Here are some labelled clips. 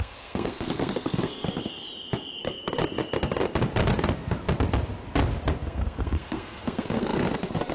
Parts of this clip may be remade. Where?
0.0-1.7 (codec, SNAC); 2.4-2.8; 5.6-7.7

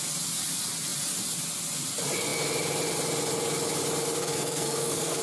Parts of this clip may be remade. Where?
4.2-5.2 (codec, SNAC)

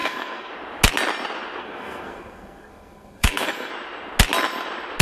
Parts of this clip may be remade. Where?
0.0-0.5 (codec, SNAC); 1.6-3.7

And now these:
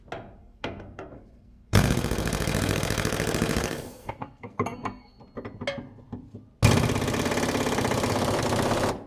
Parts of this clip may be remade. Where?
0.4-5.2 (codec, SNAC)

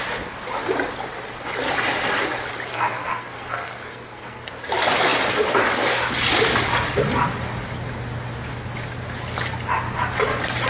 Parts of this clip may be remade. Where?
2.7-4.5 (codec, SNAC)